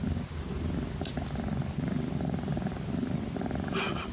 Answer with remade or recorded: recorded